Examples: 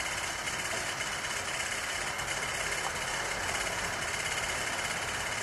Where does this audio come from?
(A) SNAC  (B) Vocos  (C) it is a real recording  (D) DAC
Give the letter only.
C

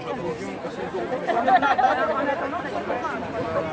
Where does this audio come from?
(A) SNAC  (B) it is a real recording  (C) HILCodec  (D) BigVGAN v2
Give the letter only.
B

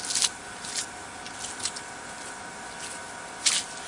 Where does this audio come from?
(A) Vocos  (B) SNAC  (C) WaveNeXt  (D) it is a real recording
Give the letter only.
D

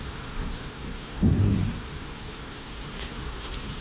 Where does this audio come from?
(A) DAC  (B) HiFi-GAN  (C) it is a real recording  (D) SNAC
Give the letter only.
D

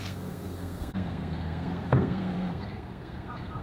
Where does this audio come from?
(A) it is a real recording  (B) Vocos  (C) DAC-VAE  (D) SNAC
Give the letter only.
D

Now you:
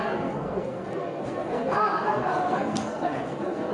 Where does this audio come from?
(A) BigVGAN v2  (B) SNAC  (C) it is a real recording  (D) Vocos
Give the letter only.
B